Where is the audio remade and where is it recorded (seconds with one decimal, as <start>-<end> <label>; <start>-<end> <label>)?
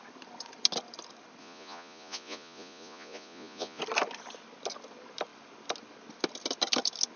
0.0-1.4 recorded; 1.4-3.8 remade; 3.8-7.2 recorded